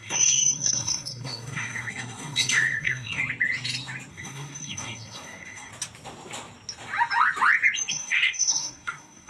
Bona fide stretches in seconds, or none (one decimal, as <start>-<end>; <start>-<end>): 3.2-4.1; 5.7-7.9